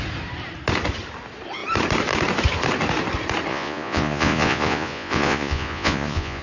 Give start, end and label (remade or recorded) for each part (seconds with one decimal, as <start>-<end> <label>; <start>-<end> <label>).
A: 0.0-3.5 recorded; 3.5-6.4 remade